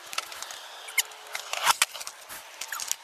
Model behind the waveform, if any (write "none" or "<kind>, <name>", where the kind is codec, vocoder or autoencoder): none